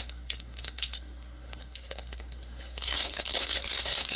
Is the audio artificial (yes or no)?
yes